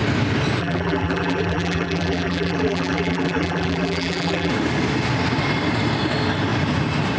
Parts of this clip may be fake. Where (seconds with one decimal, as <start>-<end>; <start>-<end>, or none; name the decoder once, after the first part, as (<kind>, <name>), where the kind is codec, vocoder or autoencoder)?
0.6-4.5 (vocoder, BigVGAN v2)